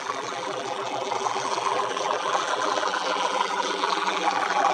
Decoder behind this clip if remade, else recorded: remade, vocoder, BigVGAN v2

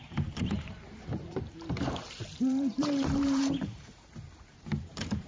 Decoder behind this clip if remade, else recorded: remade, vocoder, BigVGAN v2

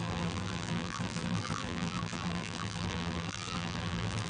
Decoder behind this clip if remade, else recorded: remade, vocoder, BigVGAN v2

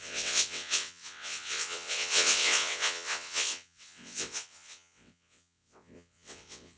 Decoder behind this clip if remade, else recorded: remade, vocoder, WaveNeXt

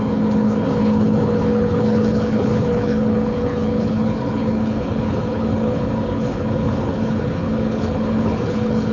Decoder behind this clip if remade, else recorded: remade, codec, HILCodec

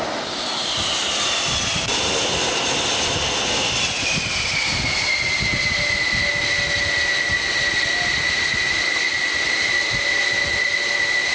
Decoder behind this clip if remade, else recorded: recorded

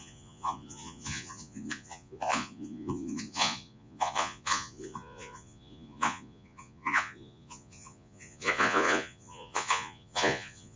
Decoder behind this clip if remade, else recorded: remade, vocoder, Vocos